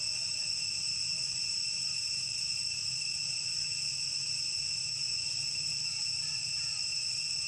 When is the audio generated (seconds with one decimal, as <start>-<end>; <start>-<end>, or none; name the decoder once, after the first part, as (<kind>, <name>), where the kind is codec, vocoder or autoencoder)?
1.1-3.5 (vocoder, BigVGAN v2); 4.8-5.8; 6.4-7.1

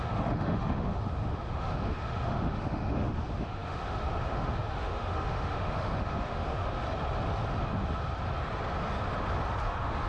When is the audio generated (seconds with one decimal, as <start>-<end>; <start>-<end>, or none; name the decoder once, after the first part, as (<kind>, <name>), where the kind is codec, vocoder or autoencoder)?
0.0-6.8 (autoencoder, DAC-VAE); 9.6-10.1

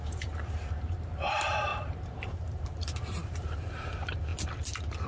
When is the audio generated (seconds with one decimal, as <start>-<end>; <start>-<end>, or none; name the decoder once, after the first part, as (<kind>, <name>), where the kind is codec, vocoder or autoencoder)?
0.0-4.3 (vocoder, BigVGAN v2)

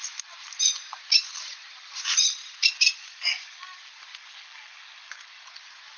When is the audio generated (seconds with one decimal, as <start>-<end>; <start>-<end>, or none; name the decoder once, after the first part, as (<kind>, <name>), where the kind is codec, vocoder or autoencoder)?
3.0-3.8 (codec, DAC); 4.3-5.5

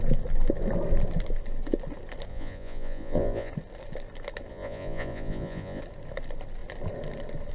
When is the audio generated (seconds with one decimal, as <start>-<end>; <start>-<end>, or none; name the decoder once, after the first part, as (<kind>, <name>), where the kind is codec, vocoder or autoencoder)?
2.3-3.5 (vocoder, Vocos); 4.5-5.8

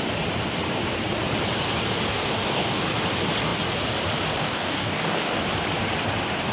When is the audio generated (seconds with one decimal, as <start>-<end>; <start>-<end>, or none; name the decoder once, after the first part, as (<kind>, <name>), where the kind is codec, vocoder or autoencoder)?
2.1-2.8 (codec, DAC); 4.4-5.4

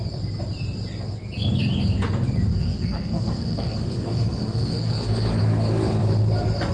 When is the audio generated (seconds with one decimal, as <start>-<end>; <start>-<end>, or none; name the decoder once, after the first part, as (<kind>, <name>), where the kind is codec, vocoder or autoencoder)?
2.5-5.4 (codec, SNAC)